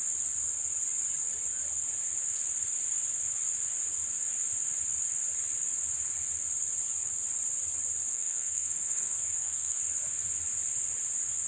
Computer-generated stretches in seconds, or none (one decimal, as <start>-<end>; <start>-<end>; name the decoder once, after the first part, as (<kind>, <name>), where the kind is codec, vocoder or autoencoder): 8.1-9.8 (codec, SNAC)